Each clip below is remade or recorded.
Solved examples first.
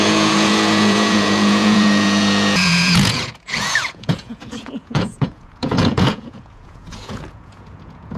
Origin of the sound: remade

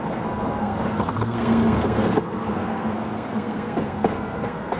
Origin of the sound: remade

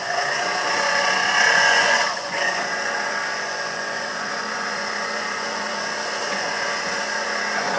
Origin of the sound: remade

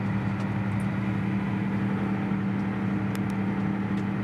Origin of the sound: recorded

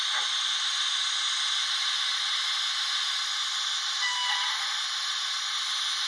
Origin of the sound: recorded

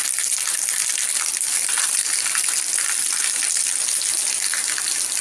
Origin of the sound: recorded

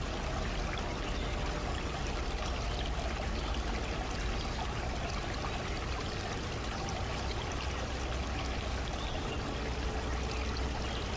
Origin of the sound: recorded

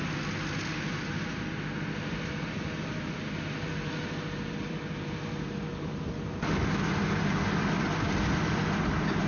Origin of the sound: recorded